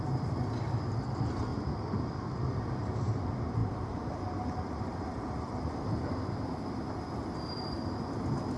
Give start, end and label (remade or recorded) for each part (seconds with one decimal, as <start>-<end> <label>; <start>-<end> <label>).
0.0-8.6 recorded